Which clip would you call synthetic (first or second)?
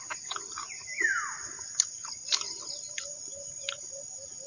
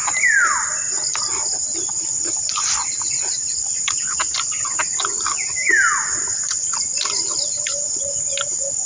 first